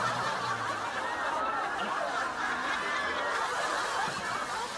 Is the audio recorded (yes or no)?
yes